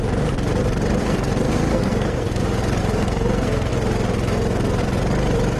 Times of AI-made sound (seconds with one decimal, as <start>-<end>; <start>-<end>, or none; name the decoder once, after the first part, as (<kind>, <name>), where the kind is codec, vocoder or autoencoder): 1.0-2.4 (codec, SNAC); 2.8-3.7